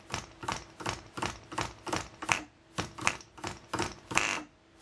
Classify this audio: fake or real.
real